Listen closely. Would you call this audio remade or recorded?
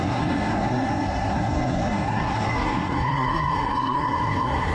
remade